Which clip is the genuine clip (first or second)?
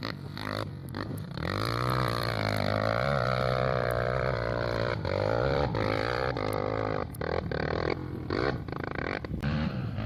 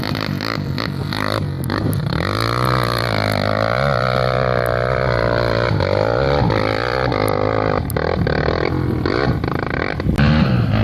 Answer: second